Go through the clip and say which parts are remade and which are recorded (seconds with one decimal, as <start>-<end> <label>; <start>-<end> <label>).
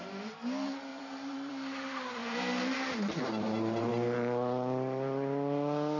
0.0-0.9 recorded; 0.9-1.5 remade; 1.5-2.2 recorded; 2.2-3.9 remade; 3.9-6.0 recorded